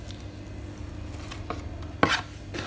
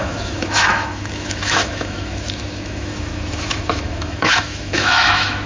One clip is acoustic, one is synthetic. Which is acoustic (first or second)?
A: first